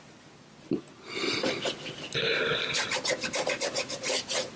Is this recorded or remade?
recorded